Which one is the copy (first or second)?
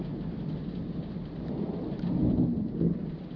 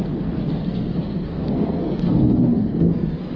second